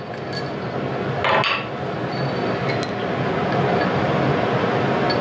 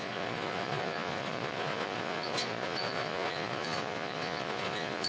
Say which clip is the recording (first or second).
first